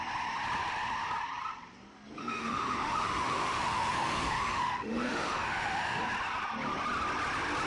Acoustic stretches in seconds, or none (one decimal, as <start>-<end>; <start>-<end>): 0.0-2.2; 6.0-7.7